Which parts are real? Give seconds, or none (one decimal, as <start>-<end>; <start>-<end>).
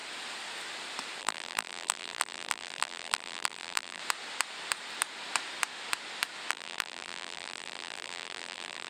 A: 0.0-1.2; 4.0-6.5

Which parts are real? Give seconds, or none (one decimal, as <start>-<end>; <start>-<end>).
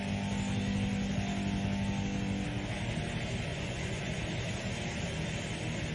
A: 0.0-3.5; 4.2-5.9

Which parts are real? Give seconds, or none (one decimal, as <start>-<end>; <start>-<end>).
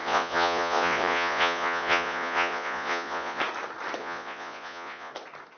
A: 3.4-4.0; 5.1-5.6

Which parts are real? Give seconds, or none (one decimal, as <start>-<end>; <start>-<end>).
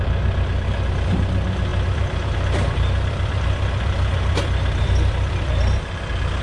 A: 0.0-1.7; 5.5-6.4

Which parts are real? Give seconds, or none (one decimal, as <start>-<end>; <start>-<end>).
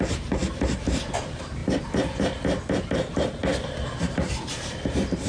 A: 0.4-1.2; 1.6-2.9; 3.4-4.0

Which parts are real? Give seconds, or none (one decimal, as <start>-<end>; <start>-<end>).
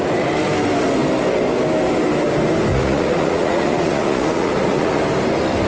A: 0.0-2.7; 5.0-5.7